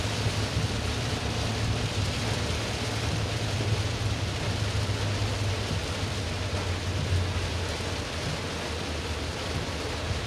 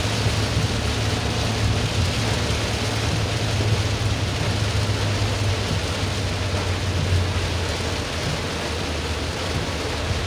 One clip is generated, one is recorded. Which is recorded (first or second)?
second